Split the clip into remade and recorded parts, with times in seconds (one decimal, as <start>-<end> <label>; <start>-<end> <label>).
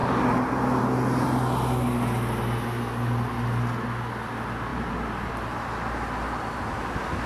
0.0-4.7 recorded; 4.7-5.3 remade; 5.3-7.3 recorded